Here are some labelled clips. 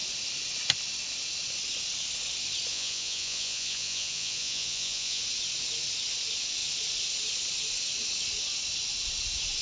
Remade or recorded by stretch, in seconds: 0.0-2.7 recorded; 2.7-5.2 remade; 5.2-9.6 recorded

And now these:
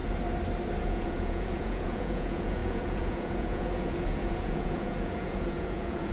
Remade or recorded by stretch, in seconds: 0.0-0.8 recorded; 0.8-6.1 remade

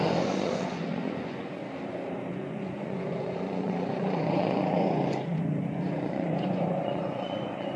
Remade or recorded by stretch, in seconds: 0.0-1.6 remade; 1.6-2.3 recorded; 2.3-7.8 remade

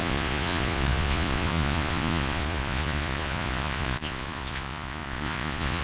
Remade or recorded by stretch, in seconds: 0.0-5.8 remade

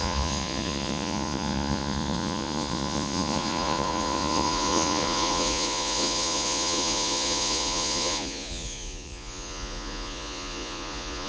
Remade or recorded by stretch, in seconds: 0.0-11.3 remade

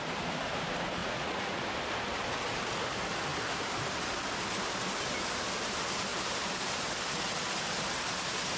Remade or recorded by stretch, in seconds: 0.0-1.0 recorded; 1.0-1.6 remade; 1.6-8.6 recorded

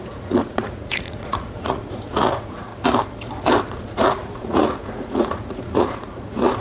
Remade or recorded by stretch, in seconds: 0.0-2.7 remade; 2.7-3.7 recorded; 3.7-6.6 remade

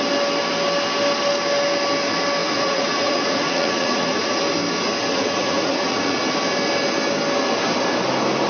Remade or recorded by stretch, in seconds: 0.0-2.4 recorded; 2.4-4.4 remade; 4.4-5.1 recorded; 5.1-6.2 remade; 6.2-8.5 recorded